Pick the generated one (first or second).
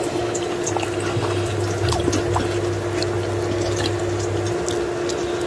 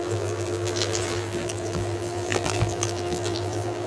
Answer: second